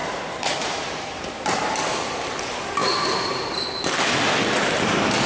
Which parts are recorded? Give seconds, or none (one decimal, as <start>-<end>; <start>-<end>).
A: 1.7-5.3